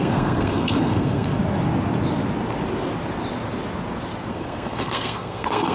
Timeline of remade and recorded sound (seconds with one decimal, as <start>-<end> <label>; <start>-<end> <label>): 0.0-1.4 remade; 1.4-4.3 recorded; 4.3-5.7 remade